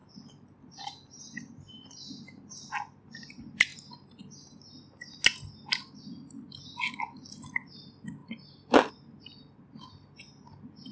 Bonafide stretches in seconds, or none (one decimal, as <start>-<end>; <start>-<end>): 1.2-10.9